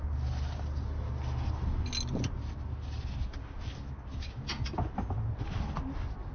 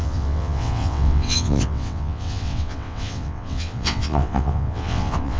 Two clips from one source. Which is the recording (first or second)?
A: first